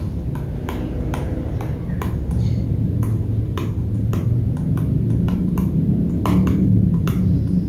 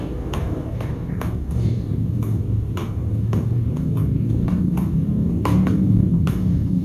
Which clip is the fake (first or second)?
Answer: second